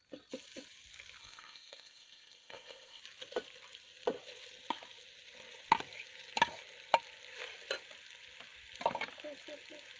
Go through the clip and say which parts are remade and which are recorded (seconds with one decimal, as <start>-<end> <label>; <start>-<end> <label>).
0.0-1.2 recorded; 1.2-3.0 remade; 3.0-10.0 recorded